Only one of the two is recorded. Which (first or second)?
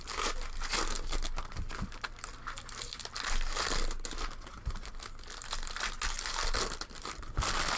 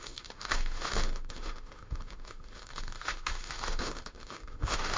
first